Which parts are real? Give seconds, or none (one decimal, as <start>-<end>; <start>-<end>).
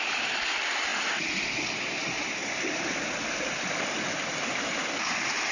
0.0-5.5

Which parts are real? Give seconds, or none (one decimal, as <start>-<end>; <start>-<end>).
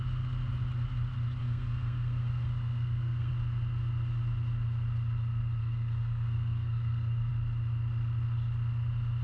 0.0-1.4; 3.3-5.6; 7.3-9.2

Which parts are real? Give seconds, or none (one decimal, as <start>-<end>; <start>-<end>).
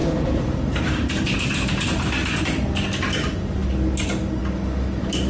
1.7-2.2; 2.7-5.3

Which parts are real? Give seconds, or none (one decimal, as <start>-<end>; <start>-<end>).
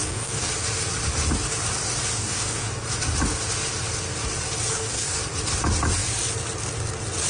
0.5-2.1; 2.7-4.7; 5.2-7.3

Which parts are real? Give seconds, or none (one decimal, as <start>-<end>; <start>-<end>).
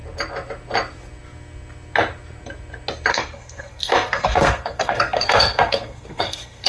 0.0-3.1